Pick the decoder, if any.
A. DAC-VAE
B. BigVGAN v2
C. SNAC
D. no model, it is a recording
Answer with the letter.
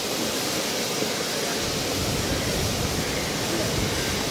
D